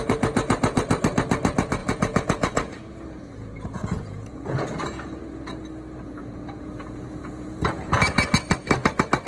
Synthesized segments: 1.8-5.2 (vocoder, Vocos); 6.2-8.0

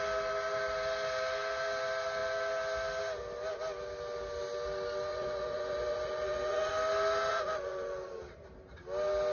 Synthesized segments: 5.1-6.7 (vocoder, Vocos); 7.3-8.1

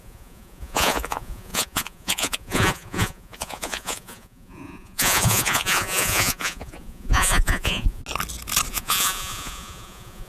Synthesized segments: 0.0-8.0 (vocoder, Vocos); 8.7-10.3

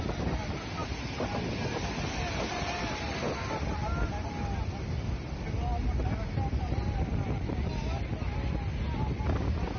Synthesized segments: none

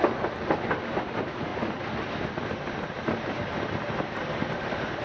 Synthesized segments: none

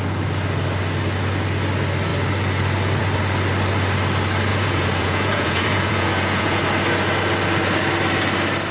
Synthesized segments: 4.5-6.6 (vocoder, Vocos)

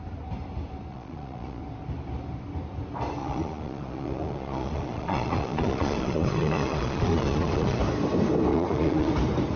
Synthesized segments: 0.9-1.6 (vocoder, Vocos); 3.2-7.8; 8.5-9.1